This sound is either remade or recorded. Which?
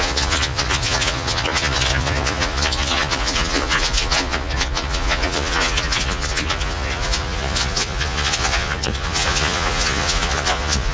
remade